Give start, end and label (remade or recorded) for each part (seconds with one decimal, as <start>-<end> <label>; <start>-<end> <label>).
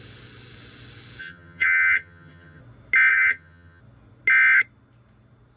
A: 0.0-1.2 recorded; 1.2-2.6 remade; 2.6-3.1 recorded; 3.1-3.8 remade; 3.8-5.6 recorded